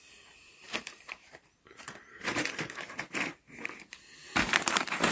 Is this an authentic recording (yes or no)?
no